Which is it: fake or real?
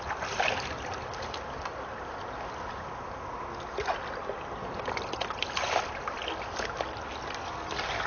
real